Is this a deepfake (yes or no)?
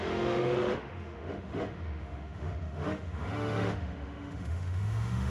yes